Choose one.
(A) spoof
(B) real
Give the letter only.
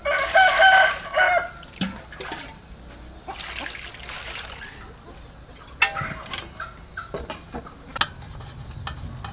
B